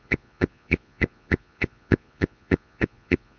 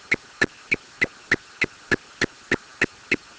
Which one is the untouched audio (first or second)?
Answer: second